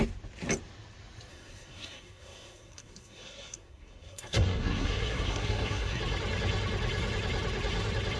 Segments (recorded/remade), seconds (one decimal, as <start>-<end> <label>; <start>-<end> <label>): 0.0-1.3 recorded; 1.3-6.0 remade; 6.0-8.2 recorded